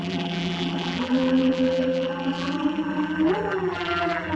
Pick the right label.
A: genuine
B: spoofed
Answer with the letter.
B